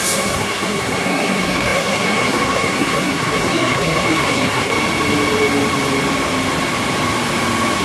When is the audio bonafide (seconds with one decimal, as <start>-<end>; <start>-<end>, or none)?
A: 4.7-7.8

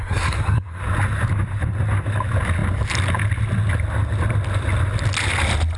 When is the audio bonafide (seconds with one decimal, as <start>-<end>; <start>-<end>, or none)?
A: 0.8-5.8

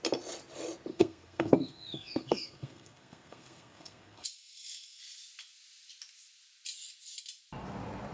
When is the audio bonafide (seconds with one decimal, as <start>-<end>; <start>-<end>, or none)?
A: 0.0-0.9; 5.0-8.1

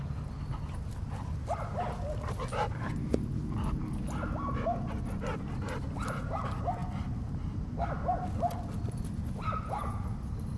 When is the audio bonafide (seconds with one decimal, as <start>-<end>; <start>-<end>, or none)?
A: 0.0-10.6

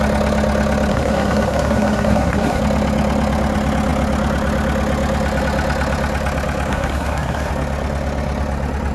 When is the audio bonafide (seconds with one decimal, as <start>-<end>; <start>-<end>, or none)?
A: 0.0-0.9; 2.6-6.7; 7.5-8.9

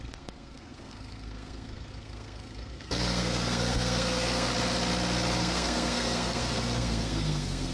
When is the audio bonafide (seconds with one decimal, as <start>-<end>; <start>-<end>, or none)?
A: 4.5-5.4

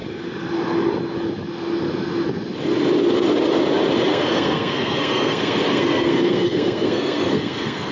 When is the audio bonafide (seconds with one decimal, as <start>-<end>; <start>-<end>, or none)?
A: 0.0-4.1